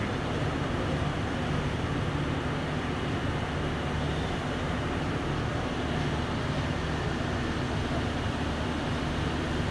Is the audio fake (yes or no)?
no